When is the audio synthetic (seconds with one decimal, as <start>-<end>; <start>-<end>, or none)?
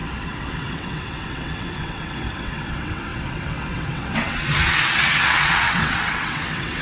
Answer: 0.0-6.8